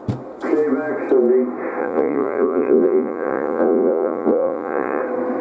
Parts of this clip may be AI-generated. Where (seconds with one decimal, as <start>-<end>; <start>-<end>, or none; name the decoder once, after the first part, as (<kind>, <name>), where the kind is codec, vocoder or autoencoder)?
1.8-5.0 (vocoder, Vocos)

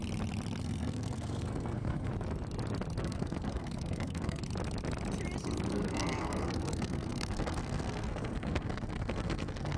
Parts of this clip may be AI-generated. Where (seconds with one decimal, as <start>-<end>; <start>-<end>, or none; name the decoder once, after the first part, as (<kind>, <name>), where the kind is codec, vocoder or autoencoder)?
0.6-2.1 (codec, SNAC); 3.0-4.4; 5.7-9.8

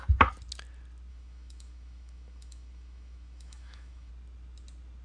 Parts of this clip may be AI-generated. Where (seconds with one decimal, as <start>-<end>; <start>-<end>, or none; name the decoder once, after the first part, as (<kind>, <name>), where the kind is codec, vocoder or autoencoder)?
1.1-4.1 (autoencoder, DAC-VAE)

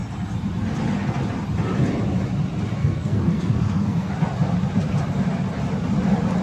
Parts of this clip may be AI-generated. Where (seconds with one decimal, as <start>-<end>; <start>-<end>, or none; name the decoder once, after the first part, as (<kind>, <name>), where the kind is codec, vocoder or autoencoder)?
2.8-4.1 (codec, SNAC)

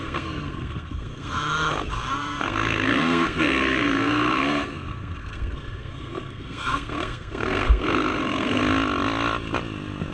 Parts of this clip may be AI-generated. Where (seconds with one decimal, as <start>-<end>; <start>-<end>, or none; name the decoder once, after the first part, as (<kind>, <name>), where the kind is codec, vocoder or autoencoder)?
0.0-8.6 (codec, SNAC)